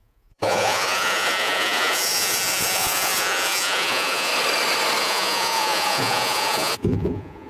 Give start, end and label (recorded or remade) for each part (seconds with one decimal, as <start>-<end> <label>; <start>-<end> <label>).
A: 0.0-4.3 remade; 4.3-5.0 recorded; 5.0-7.5 remade